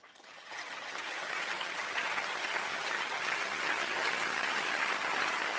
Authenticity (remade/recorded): remade